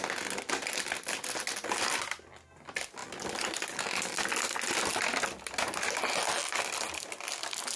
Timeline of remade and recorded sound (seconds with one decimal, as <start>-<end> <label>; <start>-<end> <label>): 0.0-7.8 recorded